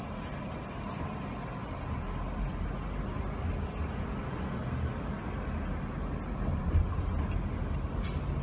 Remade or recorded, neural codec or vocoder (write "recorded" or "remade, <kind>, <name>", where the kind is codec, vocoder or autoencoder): recorded